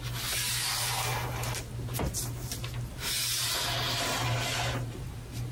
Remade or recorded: recorded